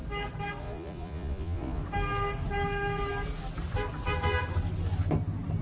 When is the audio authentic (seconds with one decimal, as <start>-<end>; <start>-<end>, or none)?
0.0-0.6; 1.8-5.6